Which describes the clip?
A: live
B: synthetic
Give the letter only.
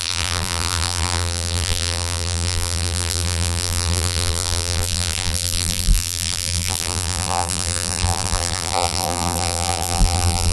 B